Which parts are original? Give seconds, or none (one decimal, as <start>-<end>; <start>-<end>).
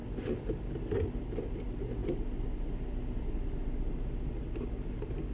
0.0-5.3